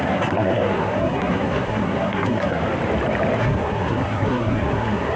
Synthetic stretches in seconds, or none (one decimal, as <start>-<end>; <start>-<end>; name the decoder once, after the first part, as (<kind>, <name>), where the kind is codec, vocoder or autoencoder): 0.0-2.6 (codec, SNAC); 3.4-5.2